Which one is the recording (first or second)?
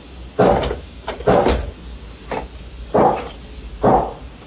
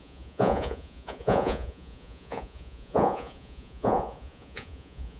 first